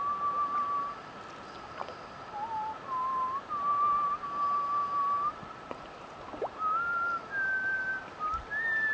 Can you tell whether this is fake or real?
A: real